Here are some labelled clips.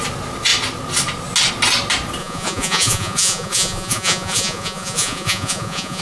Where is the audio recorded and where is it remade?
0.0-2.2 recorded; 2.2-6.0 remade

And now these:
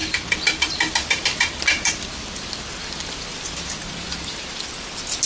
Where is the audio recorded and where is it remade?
0.0-5.3 recorded

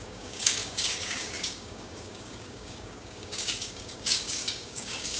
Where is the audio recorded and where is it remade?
0.0-5.2 remade

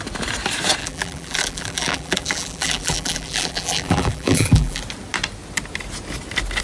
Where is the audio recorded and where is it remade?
0.0-0.8 recorded; 0.8-4.8 remade; 4.8-6.6 recorded

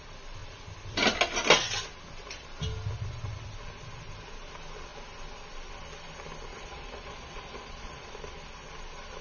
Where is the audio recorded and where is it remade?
0.0-6.5 recorded; 6.5-8.1 remade; 8.1-9.2 recorded

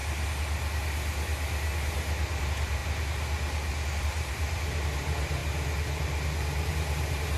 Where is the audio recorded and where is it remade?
0.0-2.4 recorded; 2.4-2.8 remade; 2.8-4.0 recorded; 4.0-5.4 remade; 5.4-6.7 recorded; 6.7-7.4 remade